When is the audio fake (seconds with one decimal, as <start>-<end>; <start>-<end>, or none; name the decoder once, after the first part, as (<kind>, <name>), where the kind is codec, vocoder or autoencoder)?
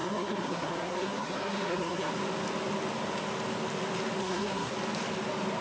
0.0-2.1 (codec, SNAC); 4.2-4.7